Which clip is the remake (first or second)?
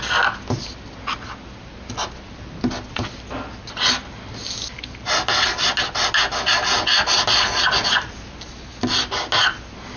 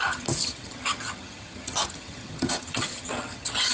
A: second